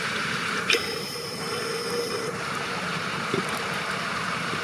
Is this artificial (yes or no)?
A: yes